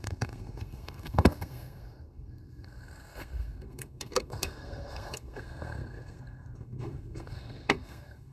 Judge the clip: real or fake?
fake